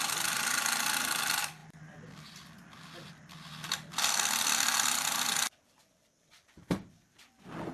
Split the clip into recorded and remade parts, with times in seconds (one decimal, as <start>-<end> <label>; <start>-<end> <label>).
0.0-7.7 recorded